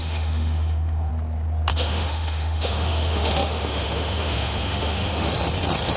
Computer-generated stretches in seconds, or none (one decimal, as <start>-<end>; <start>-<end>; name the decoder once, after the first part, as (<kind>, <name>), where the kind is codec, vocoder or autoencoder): 0.0-1.1 (autoencoder, DAC-VAE); 1.7-5.3